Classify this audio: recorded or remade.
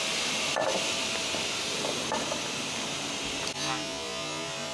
recorded